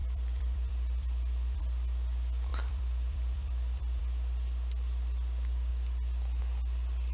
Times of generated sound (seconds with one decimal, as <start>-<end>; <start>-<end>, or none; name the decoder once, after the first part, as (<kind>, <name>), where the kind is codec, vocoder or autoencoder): 0.0-1.6 (vocoder, BigVGAN v2); 2.5-4.0